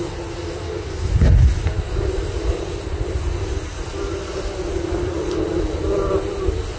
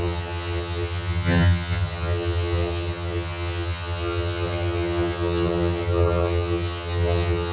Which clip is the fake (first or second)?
second